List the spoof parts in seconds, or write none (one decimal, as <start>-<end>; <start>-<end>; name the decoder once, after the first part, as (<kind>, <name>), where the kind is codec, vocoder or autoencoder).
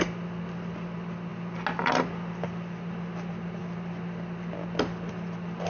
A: none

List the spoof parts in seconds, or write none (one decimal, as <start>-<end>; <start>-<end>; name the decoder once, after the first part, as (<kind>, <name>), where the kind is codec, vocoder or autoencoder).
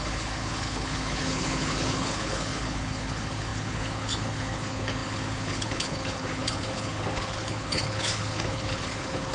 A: 0.0-9.3 (codec, HILCodec)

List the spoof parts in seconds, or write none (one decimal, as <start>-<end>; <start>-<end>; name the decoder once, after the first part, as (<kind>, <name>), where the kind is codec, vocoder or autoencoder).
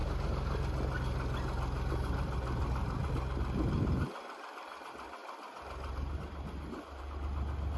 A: none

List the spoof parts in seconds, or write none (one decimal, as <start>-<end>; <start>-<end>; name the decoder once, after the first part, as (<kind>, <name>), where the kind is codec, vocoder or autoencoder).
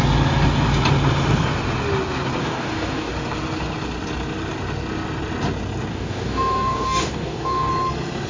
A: 2.4-3.1 (codec, DAC); 5.9-7.7